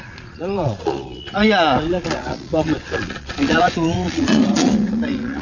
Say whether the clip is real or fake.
fake